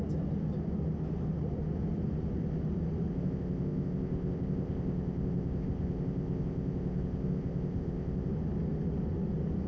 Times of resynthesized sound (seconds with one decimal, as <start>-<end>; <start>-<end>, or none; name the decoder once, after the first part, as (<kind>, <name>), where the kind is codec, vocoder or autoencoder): 3.1-8.3 (codec, ZipCodec)